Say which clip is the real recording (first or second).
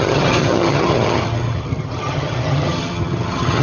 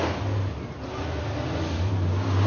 second